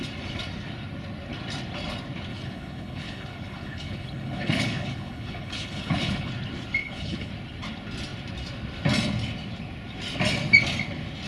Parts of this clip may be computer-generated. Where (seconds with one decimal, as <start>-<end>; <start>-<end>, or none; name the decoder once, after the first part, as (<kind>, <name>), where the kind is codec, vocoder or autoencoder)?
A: 2.3-6.3 (codec, HILCodec); 6.8-7.3